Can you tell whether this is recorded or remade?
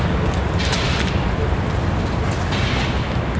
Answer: recorded